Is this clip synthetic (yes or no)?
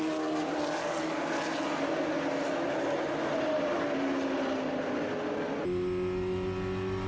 no